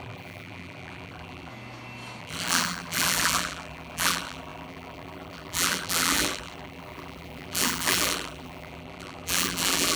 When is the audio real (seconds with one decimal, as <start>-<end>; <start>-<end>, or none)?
1.5-2.2